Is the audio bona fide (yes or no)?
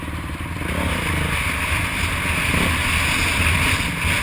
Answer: yes